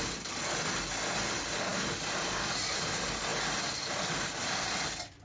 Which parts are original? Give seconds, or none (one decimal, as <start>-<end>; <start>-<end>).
0.0-5.2